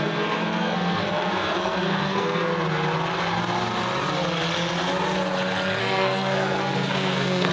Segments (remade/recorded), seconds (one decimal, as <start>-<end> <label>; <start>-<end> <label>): 0.0-2.5 remade; 2.5-5.8 recorded; 5.8-7.5 remade